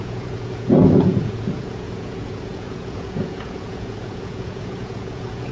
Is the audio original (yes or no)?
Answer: no